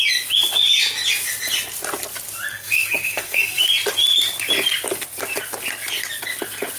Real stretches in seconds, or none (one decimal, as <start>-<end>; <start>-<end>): 0.0-2.5; 3.6-6.8